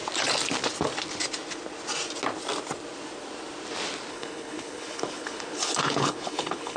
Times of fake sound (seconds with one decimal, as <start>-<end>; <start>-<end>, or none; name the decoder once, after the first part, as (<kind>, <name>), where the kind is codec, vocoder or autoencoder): 4.1-6.8 (codec, HILCodec)